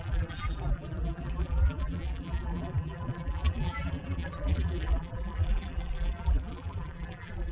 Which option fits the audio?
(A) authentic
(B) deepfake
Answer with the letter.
B